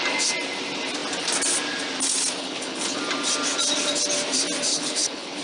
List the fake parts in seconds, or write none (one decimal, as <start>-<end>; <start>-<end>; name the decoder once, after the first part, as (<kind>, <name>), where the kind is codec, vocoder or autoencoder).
2.4-3.0 (codec, HILCodec); 4.7-5.4